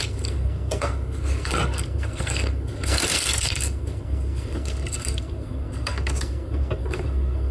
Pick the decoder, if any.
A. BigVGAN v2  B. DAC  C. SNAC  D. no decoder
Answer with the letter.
C